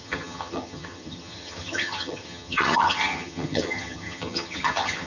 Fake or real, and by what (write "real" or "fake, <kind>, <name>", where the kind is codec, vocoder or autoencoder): fake, vocoder, HiFi-GAN